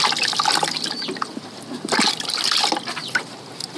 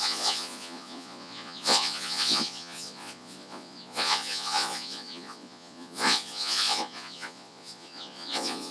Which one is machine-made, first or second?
second